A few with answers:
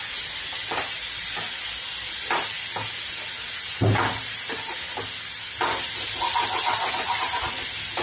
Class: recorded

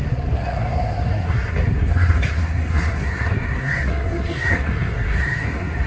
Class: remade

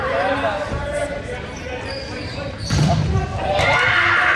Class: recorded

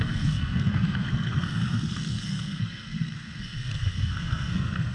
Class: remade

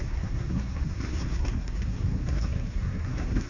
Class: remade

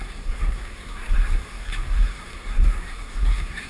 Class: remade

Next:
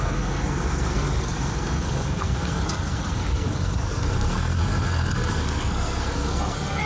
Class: remade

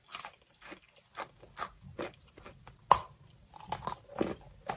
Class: recorded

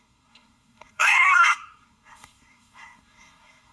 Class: remade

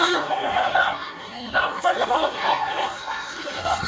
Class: remade